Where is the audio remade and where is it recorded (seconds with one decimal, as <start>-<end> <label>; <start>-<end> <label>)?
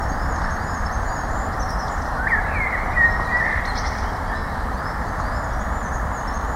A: 0.0-4.4 remade; 4.4-5.9 recorded; 5.9-6.6 remade